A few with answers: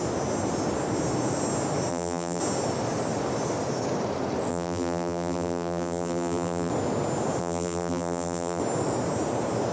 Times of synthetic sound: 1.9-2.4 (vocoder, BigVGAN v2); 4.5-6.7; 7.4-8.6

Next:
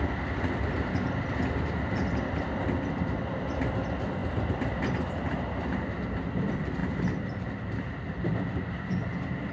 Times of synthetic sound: 6.8-7.7 (vocoder, BigVGAN v2)

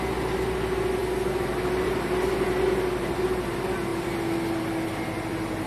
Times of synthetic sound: none